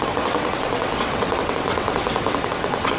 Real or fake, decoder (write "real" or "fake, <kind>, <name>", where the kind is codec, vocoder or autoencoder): fake, vocoder, WaveNeXt